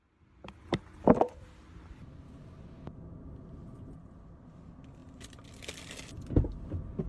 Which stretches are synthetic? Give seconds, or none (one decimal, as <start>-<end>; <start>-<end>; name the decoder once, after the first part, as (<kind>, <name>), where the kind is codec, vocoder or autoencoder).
none